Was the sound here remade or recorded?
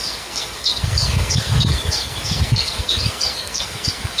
remade